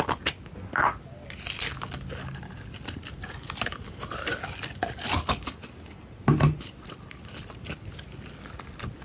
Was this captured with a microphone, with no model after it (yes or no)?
yes